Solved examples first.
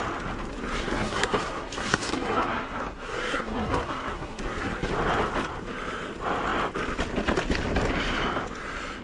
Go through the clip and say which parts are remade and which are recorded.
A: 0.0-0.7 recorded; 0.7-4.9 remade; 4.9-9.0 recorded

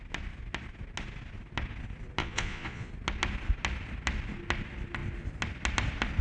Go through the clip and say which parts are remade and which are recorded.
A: 0.0-2.2 recorded; 2.2-2.9 remade; 2.9-6.2 recorded

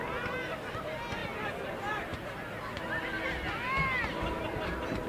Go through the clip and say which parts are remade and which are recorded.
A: 0.0-5.1 recorded

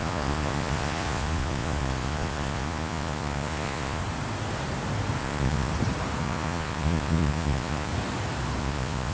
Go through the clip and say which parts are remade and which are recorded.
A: 0.0-4.0 remade; 4.0-5.2 recorded; 5.2-5.7 remade; 5.7-6.2 recorded; 6.2-7.9 remade; 7.9-8.6 recorded; 8.6-9.1 remade

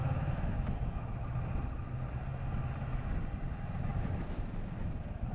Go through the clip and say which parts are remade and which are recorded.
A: 0.0-1.1 remade; 1.1-5.3 recorded

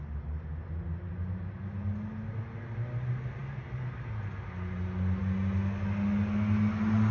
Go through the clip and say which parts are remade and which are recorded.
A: 0.0-7.1 recorded

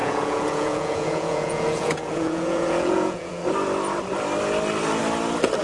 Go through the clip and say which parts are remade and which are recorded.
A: 0.0-3.4 remade; 3.4-5.6 recorded

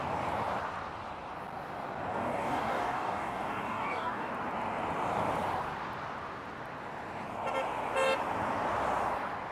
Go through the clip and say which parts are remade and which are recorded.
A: 0.0-2.1 recorded; 2.1-4.3 remade; 4.3-9.5 recorded